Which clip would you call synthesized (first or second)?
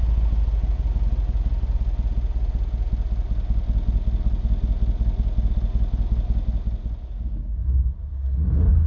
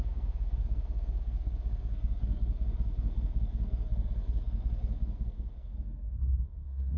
second